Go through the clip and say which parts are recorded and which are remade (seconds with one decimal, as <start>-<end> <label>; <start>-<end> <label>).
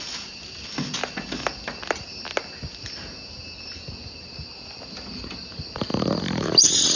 0.0-5.9 recorded; 5.9-7.0 remade